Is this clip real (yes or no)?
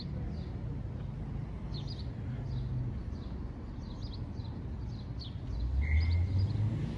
yes